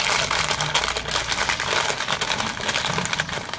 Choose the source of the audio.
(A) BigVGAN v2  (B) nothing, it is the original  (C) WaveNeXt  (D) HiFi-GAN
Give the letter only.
B